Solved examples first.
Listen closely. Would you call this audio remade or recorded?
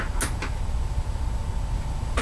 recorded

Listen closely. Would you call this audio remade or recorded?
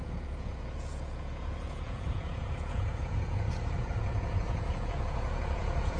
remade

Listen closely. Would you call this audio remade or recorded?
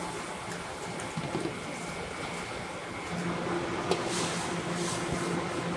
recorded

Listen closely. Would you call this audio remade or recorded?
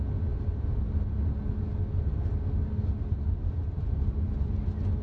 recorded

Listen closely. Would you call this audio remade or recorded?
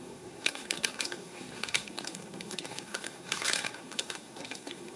remade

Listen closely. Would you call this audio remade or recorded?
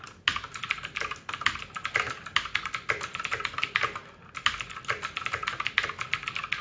recorded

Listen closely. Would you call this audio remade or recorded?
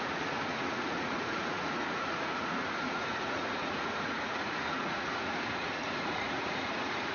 remade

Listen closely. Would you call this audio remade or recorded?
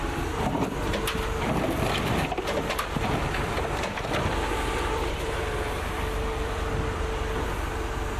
remade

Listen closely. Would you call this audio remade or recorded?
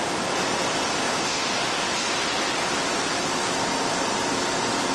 recorded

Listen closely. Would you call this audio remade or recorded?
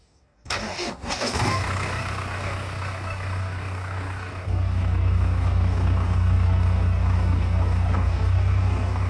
remade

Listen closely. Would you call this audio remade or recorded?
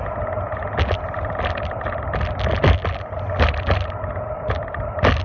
recorded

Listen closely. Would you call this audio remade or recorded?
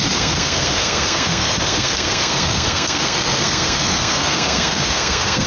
remade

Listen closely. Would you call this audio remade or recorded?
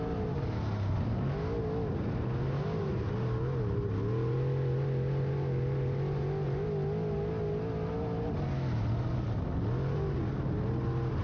recorded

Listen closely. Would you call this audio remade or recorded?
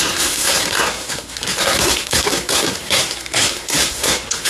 remade